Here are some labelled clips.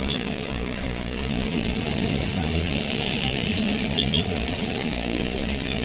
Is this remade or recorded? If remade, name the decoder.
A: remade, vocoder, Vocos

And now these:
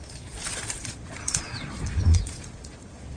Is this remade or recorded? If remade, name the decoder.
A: remade, vocoder, Vocos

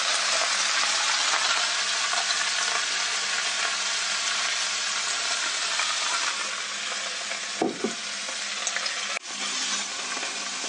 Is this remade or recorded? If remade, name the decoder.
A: recorded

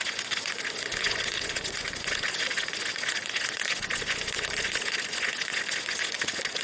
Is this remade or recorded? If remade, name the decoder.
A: remade, vocoder, Vocos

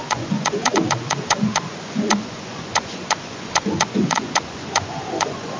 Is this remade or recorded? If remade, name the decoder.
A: remade, vocoder, Vocos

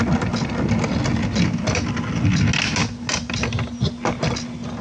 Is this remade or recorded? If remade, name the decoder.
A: recorded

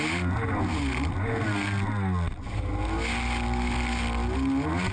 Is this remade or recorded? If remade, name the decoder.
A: recorded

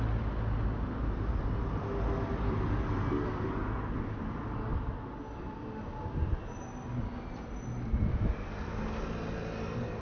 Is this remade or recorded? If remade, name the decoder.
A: recorded